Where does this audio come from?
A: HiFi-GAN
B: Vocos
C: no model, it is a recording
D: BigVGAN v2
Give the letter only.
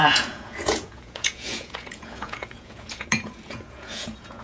B